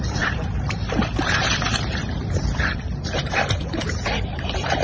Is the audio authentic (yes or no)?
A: no